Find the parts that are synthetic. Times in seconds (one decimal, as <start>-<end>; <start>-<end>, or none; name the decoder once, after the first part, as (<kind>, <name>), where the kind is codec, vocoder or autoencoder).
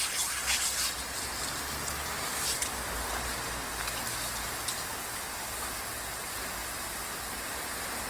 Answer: none